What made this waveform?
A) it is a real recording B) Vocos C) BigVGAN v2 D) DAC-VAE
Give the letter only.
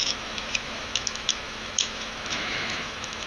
D